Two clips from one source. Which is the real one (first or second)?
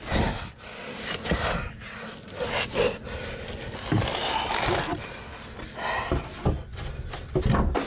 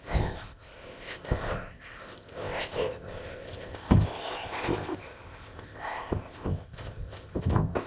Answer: first